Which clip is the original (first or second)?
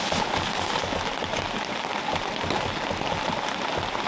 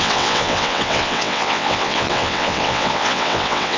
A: first